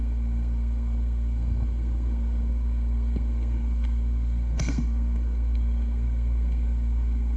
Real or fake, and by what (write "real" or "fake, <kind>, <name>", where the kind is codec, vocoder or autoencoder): fake, codec, SNAC